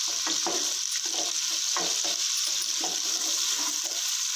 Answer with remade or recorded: recorded